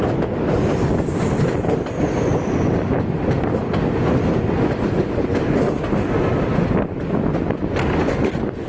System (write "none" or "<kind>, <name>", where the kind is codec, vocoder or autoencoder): none